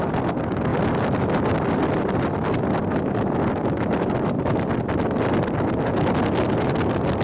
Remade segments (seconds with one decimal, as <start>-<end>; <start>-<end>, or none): 0.7-4.3